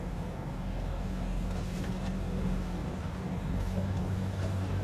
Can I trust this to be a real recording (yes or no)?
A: no